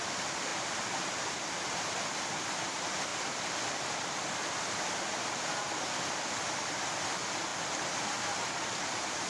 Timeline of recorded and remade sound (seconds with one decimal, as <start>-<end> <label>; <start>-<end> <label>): 0.0-7.5 recorded; 7.5-8.2 remade; 8.2-9.3 recorded